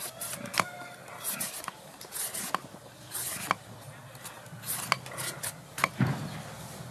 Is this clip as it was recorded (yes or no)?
yes